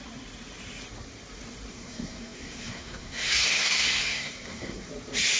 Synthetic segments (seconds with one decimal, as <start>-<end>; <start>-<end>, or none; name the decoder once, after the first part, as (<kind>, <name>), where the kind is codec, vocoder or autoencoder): 1.7-4.9 (codec, SNAC)